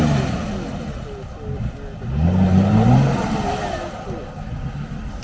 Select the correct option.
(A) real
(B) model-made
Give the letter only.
A